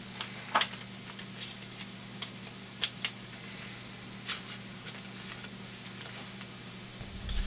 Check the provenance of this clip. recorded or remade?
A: recorded